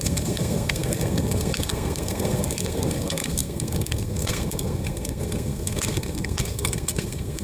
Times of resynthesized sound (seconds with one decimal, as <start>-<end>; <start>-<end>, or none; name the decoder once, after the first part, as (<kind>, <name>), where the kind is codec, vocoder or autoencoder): 0.0-7.4 (codec, SNAC)